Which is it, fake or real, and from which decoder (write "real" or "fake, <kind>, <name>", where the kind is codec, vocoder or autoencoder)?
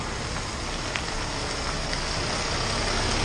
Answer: real